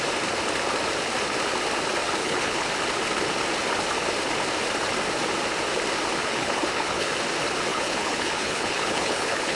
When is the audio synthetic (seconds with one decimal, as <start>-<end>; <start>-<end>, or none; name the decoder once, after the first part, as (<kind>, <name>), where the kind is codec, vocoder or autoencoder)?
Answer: 2.2-2.7 (codec, HILCodec); 6.2-7.1; 7.7-9.6